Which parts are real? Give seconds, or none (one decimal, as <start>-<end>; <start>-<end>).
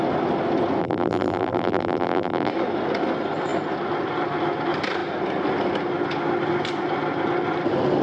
0.0-0.8; 2.5-8.0